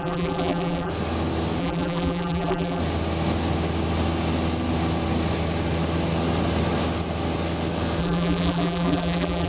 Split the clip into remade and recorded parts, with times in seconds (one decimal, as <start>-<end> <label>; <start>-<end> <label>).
0.0-0.9 remade; 0.9-1.6 recorded; 1.6-2.8 remade; 2.8-8.0 recorded; 8.0-9.5 remade

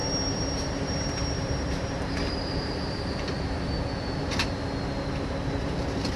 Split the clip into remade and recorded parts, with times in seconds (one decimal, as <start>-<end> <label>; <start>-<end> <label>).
0.0-3.7 remade; 3.7-6.2 recorded

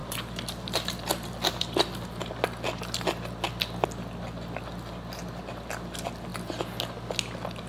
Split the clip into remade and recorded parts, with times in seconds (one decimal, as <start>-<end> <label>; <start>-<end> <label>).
0.0-2.3 remade; 2.3-7.7 recorded

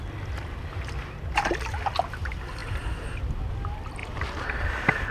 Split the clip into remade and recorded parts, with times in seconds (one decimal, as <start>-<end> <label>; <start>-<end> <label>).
0.0-2.6 recorded; 2.6-3.3 remade; 3.3-4.0 recorded; 4.0-4.6 remade; 4.6-5.1 recorded